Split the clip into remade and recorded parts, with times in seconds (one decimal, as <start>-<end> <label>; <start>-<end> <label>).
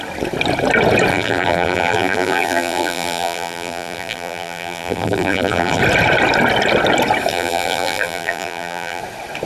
0.0-1.1 recorded; 1.1-5.8 remade; 5.8-7.3 recorded; 7.3-9.0 remade; 9.0-9.5 recorded